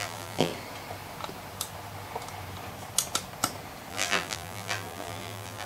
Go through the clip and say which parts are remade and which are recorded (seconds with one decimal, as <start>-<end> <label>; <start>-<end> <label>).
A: 0.0-0.5 remade; 0.5-3.9 recorded; 3.9-5.7 remade